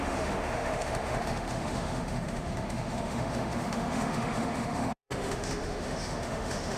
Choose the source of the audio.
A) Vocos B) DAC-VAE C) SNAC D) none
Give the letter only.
B